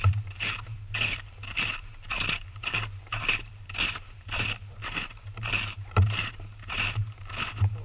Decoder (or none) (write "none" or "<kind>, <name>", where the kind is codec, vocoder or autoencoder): vocoder, BigVGAN v2